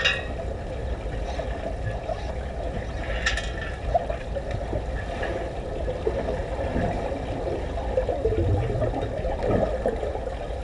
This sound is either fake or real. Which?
real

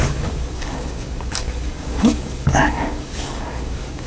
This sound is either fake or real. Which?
fake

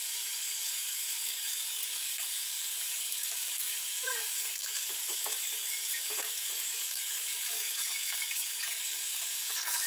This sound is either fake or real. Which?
fake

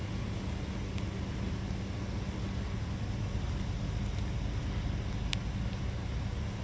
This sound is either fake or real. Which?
real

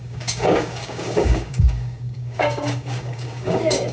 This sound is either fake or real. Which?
fake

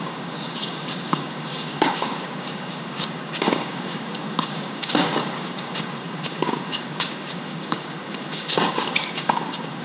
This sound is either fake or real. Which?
fake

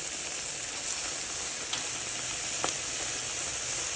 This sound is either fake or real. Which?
real